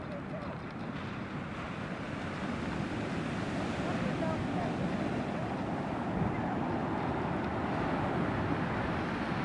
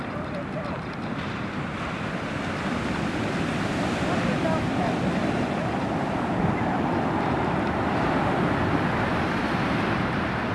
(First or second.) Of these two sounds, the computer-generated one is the second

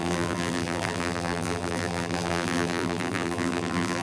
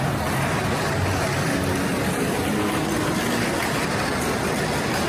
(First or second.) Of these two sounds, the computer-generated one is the first